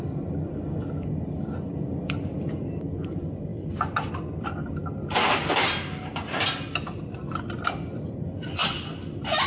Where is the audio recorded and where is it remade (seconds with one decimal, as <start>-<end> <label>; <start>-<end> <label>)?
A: 0.0-9.5 recorded